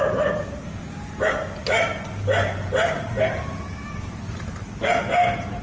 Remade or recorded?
recorded